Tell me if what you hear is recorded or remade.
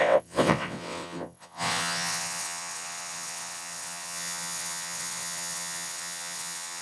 remade